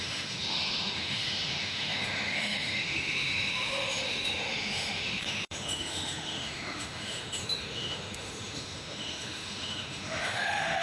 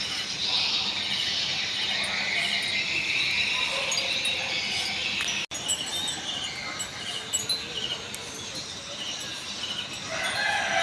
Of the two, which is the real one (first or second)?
second